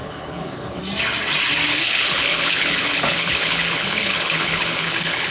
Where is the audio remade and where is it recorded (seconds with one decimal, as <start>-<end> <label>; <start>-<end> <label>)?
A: 0.0-0.8 remade; 0.8-1.7 recorded; 1.7-5.3 remade